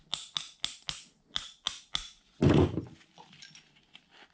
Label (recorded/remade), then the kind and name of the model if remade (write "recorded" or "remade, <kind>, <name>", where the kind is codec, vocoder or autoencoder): recorded